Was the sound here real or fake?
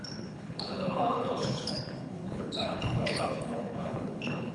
fake